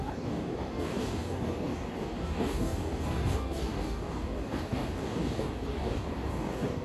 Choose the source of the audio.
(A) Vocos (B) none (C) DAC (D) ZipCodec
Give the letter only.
C